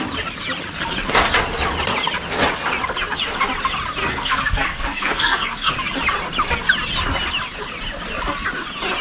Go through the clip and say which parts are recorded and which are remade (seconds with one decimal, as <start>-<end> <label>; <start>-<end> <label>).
0.0-4.0 recorded; 4.0-5.7 remade; 5.7-9.0 recorded